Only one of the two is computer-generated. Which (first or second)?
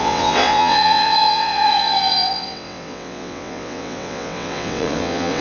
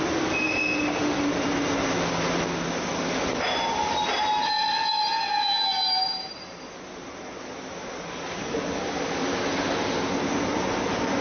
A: first